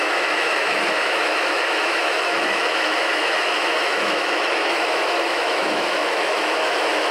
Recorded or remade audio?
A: remade